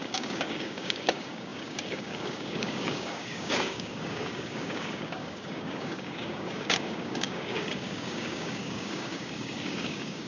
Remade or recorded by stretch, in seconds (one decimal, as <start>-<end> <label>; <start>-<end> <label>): 0.0-10.3 remade